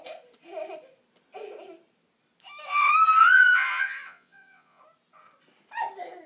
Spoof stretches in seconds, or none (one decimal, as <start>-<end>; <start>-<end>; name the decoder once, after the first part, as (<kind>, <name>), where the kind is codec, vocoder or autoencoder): 3.2-4.8 (vocoder, Vocos)